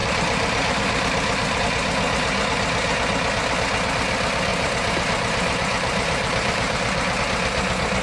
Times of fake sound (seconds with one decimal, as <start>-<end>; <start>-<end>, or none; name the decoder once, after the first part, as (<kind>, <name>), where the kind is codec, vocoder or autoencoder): 0.0-1.6 (vocoder, BigVGAN v2); 4.5-7.2